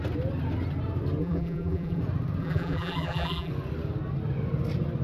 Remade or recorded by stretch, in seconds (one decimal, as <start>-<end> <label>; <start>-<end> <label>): 0.0-1.2 recorded; 1.2-2.0 remade; 2.0-2.4 recorded; 2.4-3.5 remade; 3.5-5.0 recorded